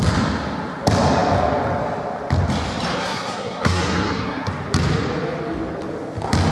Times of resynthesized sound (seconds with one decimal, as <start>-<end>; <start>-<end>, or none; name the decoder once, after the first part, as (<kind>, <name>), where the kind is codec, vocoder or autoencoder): 3.0-4.5 (codec, SNAC)